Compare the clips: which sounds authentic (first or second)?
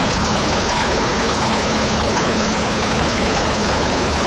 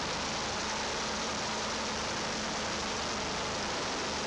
second